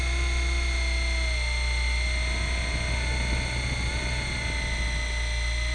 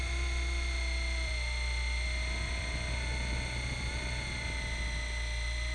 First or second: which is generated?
second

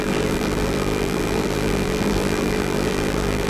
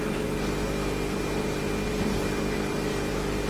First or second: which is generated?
first